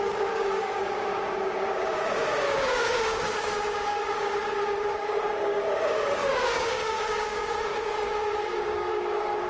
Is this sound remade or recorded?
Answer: remade